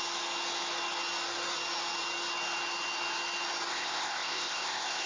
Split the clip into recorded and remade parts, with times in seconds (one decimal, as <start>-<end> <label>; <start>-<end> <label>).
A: 0.0-3.7 recorded; 3.7-5.1 remade